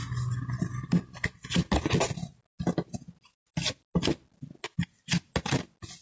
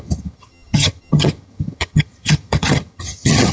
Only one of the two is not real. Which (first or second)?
second